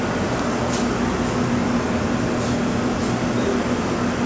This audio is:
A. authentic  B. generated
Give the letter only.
A